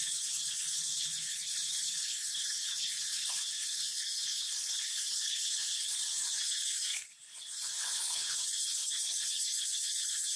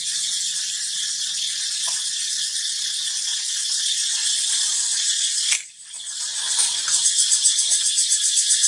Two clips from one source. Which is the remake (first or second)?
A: first